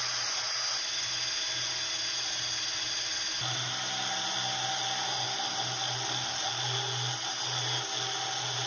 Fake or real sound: real